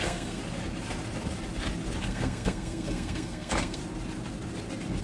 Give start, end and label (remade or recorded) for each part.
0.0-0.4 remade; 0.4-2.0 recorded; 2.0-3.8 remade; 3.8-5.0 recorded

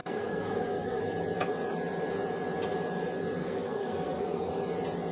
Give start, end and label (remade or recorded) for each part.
0.0-1.0 remade; 1.0-3.4 recorded; 3.4-4.5 remade; 4.5-5.1 recorded